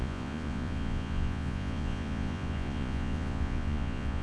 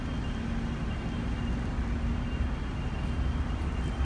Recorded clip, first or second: second